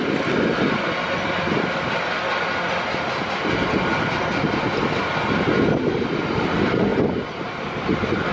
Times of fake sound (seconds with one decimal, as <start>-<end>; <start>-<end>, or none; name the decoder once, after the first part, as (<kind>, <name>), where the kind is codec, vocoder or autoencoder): none